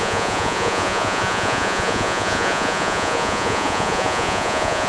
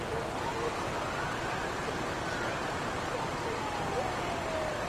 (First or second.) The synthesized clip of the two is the first